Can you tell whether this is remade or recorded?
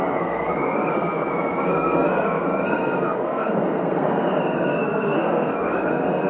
remade